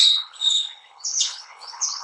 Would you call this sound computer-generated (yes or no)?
yes